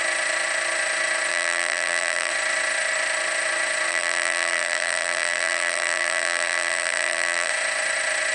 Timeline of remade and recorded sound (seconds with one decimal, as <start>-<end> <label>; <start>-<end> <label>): 0.0-1.3 recorded; 1.3-2.3 remade; 2.3-3.9 recorded; 3.9-7.5 remade; 7.5-8.3 recorded